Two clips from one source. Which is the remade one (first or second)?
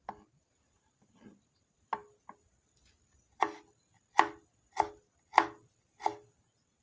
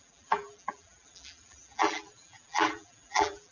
second